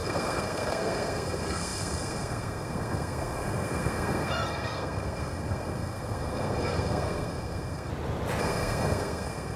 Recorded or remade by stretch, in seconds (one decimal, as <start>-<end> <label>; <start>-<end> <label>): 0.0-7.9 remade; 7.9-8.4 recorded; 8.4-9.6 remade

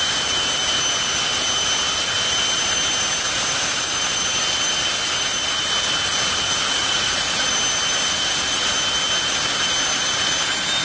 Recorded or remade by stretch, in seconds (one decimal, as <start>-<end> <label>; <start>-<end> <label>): 0.0-6.6 recorded; 6.6-7.5 remade; 7.5-10.8 recorded

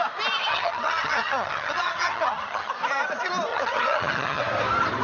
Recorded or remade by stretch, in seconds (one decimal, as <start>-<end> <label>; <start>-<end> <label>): 0.0-0.5 recorded; 0.5-2.7 remade; 2.7-3.5 recorded; 3.5-4.4 remade; 4.4-5.0 recorded

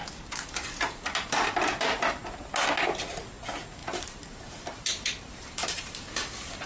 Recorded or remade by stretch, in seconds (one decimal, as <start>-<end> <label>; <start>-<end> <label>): 0.0-3.8 recorded; 3.8-6.7 remade

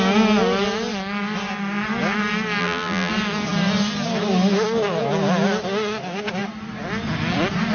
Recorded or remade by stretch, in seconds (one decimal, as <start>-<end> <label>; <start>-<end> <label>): 0.0-2.6 recorded; 2.6-3.1 remade; 3.1-7.7 recorded

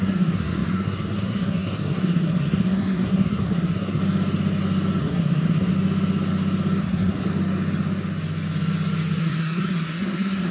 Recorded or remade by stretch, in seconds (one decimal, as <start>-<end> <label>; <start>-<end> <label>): 0.0-4.0 remade; 4.0-5.0 recorded; 5.0-5.7 remade; 5.7-6.8 recorded; 6.8-7.3 remade; 7.3-9.2 recorded; 9.2-10.5 remade